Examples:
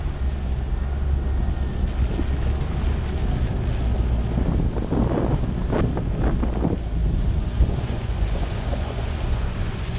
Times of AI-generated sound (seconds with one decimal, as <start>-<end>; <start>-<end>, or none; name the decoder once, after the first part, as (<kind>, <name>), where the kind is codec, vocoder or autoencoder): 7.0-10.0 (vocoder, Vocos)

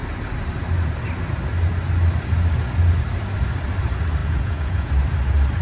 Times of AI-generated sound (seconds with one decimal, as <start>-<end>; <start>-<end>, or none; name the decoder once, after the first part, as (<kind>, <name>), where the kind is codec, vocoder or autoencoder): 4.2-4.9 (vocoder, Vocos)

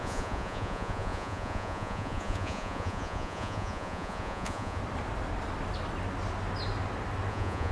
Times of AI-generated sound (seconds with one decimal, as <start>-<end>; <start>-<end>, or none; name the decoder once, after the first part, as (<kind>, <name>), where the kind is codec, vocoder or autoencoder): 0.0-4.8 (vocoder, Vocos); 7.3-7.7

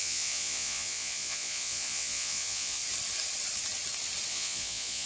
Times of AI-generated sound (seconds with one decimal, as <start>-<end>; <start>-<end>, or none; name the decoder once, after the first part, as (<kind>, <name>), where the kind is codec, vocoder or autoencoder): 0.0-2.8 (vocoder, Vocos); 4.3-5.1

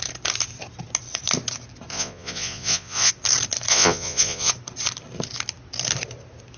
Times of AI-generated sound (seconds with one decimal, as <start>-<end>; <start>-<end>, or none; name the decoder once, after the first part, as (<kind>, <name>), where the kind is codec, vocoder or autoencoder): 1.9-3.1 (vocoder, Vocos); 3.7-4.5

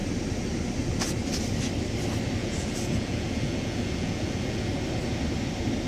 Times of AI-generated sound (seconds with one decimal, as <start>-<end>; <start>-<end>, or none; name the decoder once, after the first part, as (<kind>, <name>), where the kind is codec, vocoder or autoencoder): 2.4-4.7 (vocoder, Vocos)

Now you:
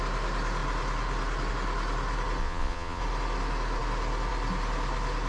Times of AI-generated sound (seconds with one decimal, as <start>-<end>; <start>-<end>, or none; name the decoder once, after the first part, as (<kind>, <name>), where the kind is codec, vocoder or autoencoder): 2.4-3.0 (vocoder, Vocos)

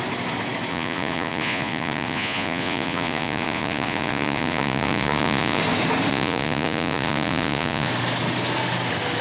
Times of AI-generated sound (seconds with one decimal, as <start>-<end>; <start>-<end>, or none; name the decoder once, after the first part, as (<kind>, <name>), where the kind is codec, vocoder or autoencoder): 0.7-5.6 (vocoder, Vocos); 6.1-7.9